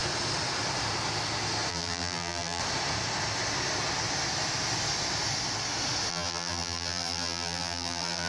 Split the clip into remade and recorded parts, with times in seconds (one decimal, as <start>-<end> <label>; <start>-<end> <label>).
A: 0.0-1.7 recorded; 1.7-2.6 remade; 2.6-6.1 recorded; 6.1-8.3 remade